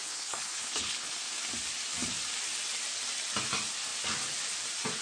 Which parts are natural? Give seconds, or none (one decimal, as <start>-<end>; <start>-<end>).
1.1-5.0